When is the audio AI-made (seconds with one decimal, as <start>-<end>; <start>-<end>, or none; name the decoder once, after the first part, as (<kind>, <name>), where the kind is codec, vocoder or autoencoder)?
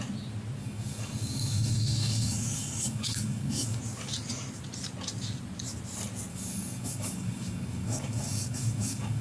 0.6-3.8 (codec, DAC); 6.3-9.2